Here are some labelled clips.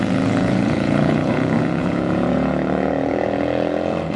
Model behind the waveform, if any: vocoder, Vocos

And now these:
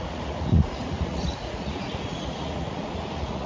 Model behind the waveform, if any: vocoder, Vocos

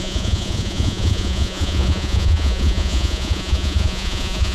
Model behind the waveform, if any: vocoder, Vocos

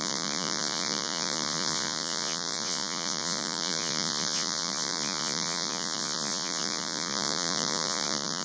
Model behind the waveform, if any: vocoder, Vocos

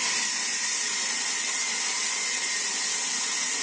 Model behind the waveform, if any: none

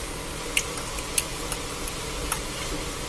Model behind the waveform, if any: none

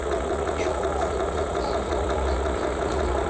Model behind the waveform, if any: vocoder, Vocos